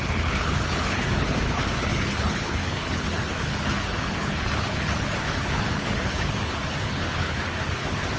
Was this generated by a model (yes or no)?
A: yes